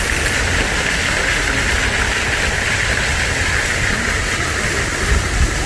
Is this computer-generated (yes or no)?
no